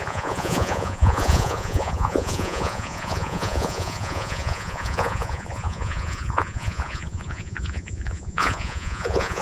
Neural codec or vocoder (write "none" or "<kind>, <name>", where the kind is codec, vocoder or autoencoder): vocoder, Vocos